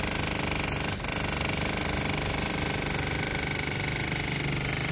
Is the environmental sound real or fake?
real